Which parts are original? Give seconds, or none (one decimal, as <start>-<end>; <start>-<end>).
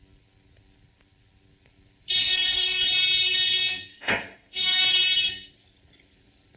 0.0-2.2; 2.8-3.2; 4.8-6.6